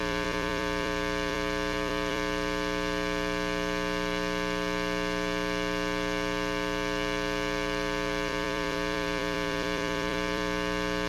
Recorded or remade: remade